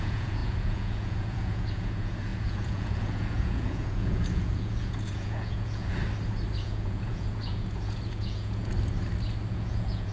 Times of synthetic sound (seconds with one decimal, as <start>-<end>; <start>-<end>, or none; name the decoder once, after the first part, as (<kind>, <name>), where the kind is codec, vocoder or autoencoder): 0.0-6.0 (vocoder, Vocos); 6.6-8.7; 9.5-10.1